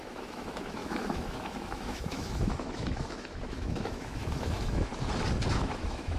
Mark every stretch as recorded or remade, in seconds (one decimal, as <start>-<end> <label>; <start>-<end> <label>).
0.0-4.9 remade; 4.9-5.5 recorded; 5.5-6.2 remade